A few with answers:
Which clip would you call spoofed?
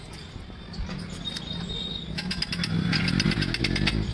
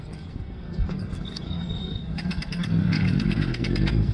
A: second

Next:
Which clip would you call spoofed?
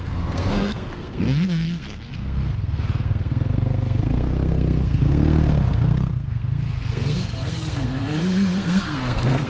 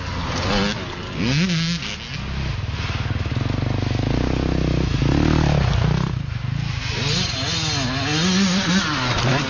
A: first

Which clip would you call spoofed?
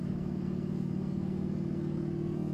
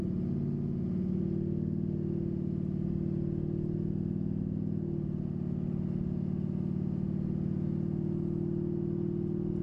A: first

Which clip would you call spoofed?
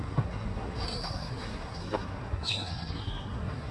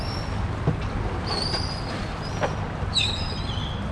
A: first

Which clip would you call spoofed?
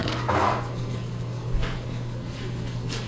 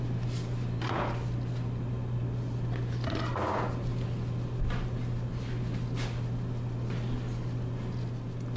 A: first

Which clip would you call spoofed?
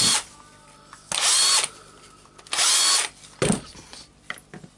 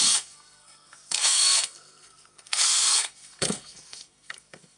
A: second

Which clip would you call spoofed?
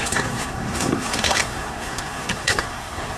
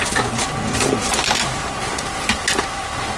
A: first